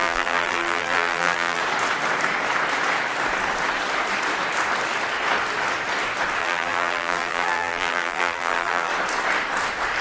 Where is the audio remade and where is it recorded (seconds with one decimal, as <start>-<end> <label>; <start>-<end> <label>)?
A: 0.0-1.6 remade; 1.6-6.4 recorded; 6.4-8.9 remade; 8.9-10.0 recorded